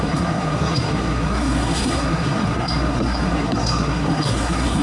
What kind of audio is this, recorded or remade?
remade